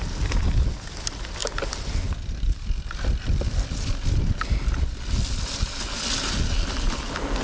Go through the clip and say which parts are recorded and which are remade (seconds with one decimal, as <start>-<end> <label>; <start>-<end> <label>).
0.0-7.4 recorded